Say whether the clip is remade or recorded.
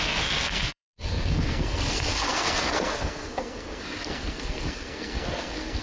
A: remade